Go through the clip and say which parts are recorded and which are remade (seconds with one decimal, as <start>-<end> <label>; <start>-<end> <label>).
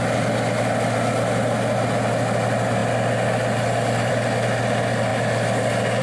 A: 0.0-6.0 recorded